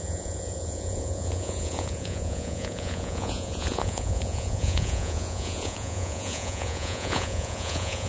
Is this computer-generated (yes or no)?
yes